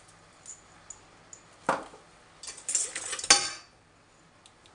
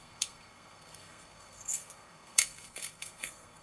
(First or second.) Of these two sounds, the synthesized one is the second